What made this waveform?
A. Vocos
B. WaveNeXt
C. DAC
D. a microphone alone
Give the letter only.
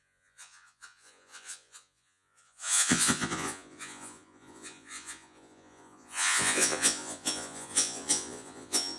A